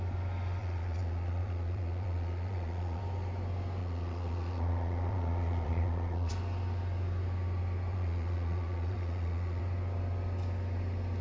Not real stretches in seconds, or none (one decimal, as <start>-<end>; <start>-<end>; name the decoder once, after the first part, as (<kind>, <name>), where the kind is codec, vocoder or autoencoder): 0.6-3.0 (vocoder, Vocos); 3.8-6.3; 7.9-9.6